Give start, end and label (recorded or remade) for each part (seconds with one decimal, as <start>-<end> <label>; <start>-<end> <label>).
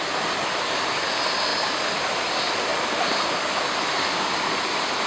0.0-1.5 recorded; 1.5-2.0 remade; 2.0-2.7 recorded; 2.7-5.1 remade